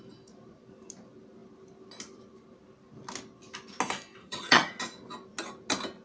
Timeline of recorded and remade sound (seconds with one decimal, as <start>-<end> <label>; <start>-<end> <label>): 0.0-4.2 recorded; 4.2-4.8 remade; 4.8-6.0 recorded